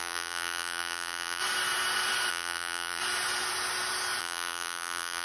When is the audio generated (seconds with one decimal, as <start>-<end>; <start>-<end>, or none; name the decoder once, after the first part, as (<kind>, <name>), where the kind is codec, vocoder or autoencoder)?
0.0-1.4 (vocoder, BigVGAN v2); 2.3-3.0; 4.2-5.2